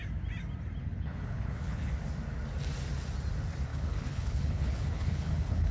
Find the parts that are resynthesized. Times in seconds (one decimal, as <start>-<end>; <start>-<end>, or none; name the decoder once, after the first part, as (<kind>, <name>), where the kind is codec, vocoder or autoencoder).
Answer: 0.8-1.9 (codec, HILCodec); 3.7-5.7